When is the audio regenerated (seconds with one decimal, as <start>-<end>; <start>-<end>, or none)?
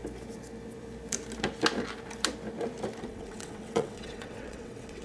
3.0-5.0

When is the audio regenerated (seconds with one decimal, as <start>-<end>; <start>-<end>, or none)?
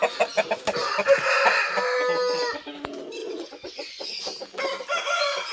3.2-4.2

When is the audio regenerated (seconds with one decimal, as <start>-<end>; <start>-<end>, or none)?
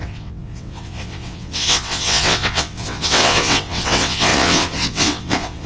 0.0-5.7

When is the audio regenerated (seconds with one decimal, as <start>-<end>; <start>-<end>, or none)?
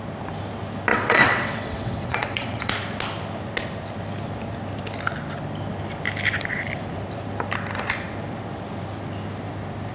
0.9-2.7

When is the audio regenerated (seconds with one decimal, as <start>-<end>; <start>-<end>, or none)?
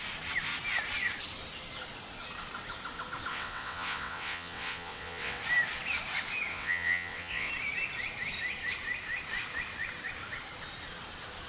3.3-5.4; 6.5-7.5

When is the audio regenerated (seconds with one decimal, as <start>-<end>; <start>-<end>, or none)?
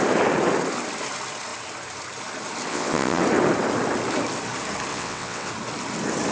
2.7-3.2; 4.9-5.5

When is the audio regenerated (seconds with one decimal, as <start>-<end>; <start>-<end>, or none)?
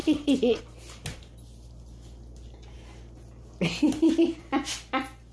0.0-0.6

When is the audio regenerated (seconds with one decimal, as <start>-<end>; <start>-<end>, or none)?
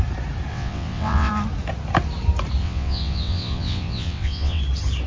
0.5-1.3; 2.6-4.6